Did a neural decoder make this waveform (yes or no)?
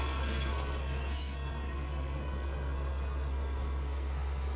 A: yes